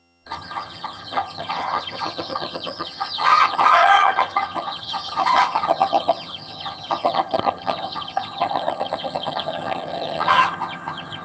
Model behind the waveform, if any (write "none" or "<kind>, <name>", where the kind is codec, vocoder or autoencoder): vocoder, HiFi-GAN